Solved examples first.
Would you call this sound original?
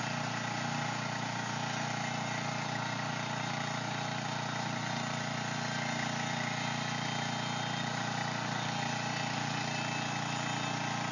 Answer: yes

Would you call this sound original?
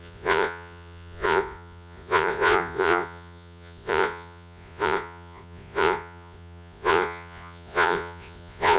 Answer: no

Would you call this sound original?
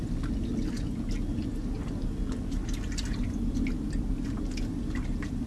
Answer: yes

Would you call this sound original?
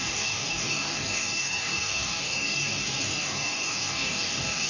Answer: no